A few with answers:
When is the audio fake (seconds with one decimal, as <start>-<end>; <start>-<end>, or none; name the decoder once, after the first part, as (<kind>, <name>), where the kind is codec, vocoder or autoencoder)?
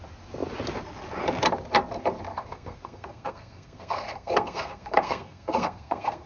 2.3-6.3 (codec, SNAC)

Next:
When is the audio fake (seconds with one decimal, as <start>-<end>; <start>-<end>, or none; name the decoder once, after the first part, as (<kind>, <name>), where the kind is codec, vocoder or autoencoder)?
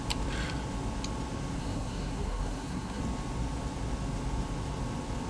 1.6-3.0 (codec, SNAC)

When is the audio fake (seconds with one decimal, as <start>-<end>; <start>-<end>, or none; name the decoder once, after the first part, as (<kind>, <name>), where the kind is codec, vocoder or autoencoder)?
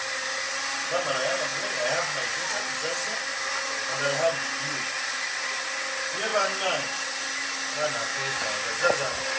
8.1-8.7 (codec, DAC)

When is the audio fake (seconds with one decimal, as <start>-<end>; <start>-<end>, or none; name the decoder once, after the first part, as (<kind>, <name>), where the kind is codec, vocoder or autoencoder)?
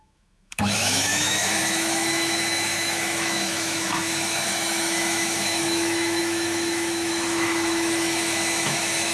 0.0-9.1 (autoencoder, DAC-VAE)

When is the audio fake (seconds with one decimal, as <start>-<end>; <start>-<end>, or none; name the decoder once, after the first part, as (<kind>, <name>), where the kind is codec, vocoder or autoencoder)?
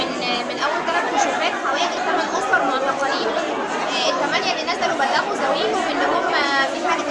0.7-1.8 (vocoder, Vocos)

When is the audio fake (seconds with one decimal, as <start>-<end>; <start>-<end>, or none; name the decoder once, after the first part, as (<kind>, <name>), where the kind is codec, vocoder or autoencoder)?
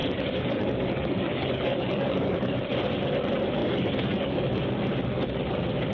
0.0-2.5 (codec, DAC); 3.6-4.6